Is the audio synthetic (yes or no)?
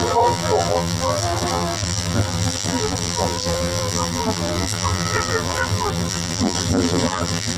yes